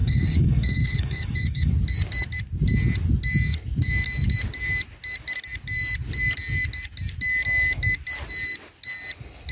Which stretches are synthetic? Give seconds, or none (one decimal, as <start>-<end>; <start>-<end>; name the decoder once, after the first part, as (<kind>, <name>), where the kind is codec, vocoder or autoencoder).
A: 0.0-1.7 (codec, DAC)